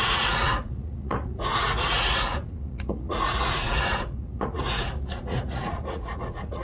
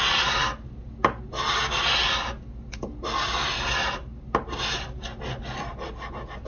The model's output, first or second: first